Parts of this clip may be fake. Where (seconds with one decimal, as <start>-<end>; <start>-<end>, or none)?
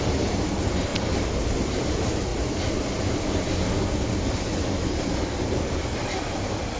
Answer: 0.0-2.3; 4.9-6.8